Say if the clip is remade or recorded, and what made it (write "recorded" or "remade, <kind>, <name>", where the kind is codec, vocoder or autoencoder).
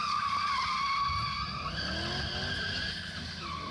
recorded